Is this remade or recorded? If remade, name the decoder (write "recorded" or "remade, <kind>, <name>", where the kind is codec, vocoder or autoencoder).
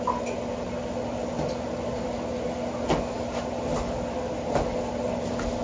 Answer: recorded